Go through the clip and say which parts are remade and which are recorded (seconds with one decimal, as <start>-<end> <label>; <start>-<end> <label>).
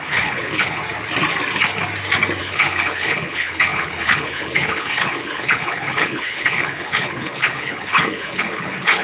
0.0-0.8 remade; 0.8-2.4 recorded; 2.4-9.0 remade